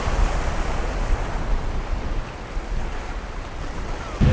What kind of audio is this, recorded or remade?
recorded